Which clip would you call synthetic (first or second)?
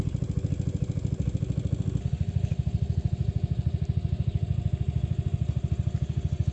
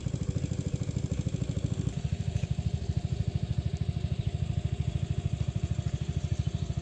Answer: second